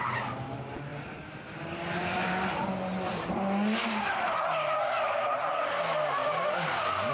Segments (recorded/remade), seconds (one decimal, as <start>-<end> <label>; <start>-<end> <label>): 0.0-0.9 recorded; 0.9-3.3 remade; 3.3-6.2 recorded; 6.2-7.1 remade

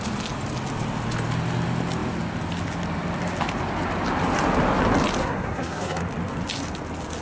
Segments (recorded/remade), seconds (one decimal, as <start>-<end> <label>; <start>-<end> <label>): 0.0-5.2 recorded; 5.2-6.0 remade; 6.0-7.2 recorded

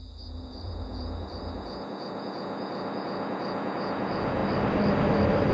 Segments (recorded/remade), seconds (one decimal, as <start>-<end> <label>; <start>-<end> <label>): 0.0-4.4 remade; 4.4-5.5 recorded

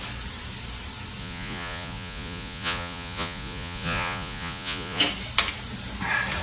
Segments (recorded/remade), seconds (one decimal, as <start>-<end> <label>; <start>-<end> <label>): 0.0-1.2 recorded; 1.2-5.0 remade; 5.0-6.4 recorded